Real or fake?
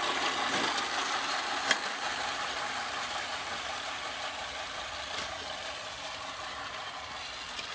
real